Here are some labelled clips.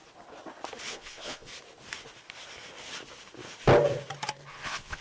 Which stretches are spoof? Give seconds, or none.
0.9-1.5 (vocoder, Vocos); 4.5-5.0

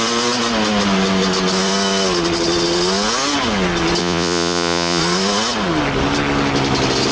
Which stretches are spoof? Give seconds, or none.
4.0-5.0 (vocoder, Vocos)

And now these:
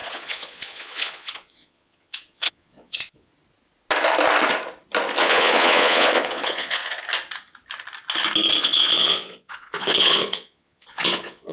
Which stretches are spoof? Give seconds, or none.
0.0-3.3 (vocoder, Vocos); 5.2-6.8; 8.6-11.5